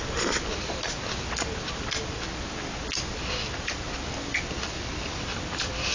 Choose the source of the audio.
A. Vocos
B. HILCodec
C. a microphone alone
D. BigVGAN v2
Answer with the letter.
C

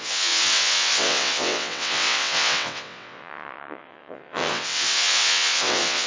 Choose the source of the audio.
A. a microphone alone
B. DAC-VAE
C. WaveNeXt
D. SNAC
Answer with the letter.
C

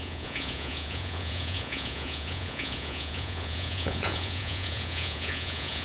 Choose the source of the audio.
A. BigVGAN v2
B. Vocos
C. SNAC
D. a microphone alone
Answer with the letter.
B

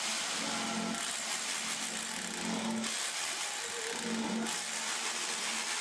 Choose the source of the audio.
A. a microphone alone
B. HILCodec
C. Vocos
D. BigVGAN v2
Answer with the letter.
A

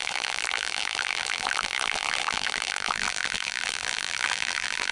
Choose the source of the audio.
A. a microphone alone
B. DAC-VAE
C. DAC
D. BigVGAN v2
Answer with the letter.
D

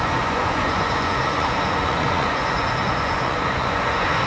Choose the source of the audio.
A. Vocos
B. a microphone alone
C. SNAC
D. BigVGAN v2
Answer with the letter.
A